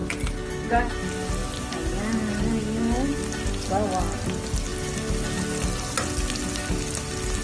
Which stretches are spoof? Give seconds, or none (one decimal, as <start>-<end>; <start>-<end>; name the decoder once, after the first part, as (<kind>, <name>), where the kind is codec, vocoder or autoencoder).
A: none